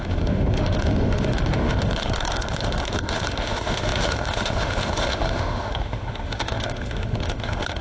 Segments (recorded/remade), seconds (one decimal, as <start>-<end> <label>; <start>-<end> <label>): 0.0-7.8 remade